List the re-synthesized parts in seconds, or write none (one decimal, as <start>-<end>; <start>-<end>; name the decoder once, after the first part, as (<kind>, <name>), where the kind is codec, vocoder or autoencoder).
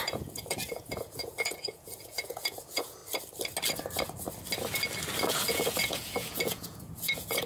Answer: 0.0-3.0 (vocoder, Vocos); 5.2-7.5